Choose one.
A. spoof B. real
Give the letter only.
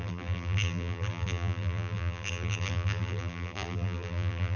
A